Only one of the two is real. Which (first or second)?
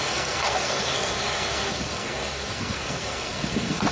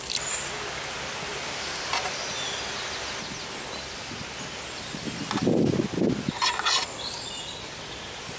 second